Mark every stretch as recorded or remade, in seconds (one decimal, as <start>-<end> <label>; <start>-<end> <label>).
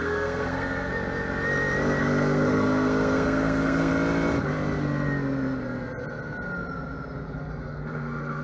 0.0-0.9 remade; 0.9-2.0 recorded; 2.0-3.9 remade; 3.9-7.6 recorded; 7.6-8.4 remade